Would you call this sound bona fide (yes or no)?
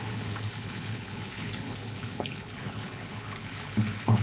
no